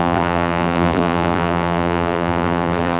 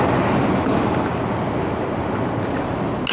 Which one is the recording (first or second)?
second